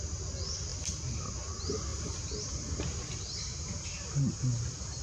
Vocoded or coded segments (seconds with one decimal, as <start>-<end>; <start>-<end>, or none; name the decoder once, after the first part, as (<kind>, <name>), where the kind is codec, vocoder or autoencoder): 1.9-5.0 (vocoder, BigVGAN v2)

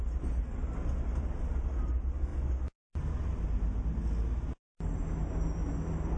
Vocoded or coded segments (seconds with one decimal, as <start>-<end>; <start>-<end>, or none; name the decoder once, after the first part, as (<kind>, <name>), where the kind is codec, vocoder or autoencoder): none